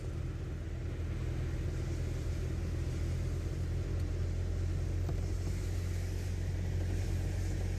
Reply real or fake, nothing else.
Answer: real